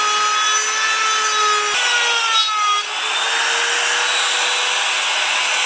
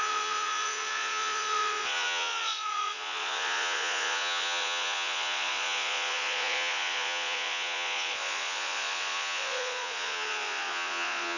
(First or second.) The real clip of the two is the first